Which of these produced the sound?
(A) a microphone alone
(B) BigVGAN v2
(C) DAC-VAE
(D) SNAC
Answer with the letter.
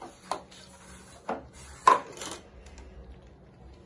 A